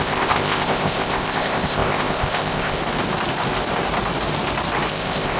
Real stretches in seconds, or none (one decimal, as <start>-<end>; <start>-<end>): 2.8-4.9